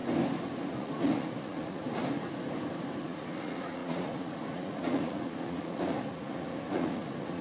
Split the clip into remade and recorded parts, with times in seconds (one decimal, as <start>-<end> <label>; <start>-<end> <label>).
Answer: 0.0-0.7 recorded; 0.7-2.0 remade; 2.0-3.0 recorded; 3.0-7.4 remade